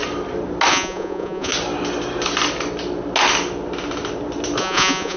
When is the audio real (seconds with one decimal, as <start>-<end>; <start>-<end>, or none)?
0.0-0.7; 1.5-4.6